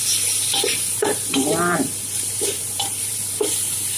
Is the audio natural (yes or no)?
no